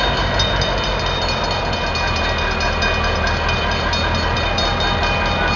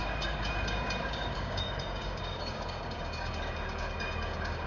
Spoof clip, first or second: second